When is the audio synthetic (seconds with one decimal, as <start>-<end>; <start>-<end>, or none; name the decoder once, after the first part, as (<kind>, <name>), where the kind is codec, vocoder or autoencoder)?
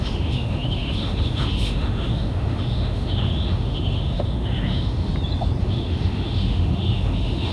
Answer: 0.0-5.1 (autoencoder, DAC-VAE); 5.6-7.5